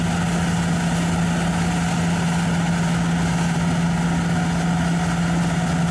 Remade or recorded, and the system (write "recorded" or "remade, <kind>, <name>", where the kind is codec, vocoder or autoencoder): recorded